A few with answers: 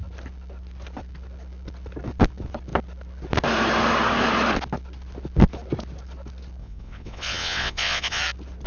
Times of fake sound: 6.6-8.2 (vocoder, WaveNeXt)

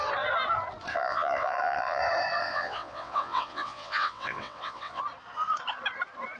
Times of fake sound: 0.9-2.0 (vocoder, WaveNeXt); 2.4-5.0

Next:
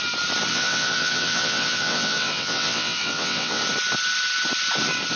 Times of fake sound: 0.5-3.6 (vocoder, WaveNeXt)

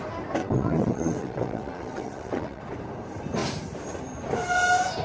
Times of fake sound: 0.4-2.6 (vocoder, WaveNeXt)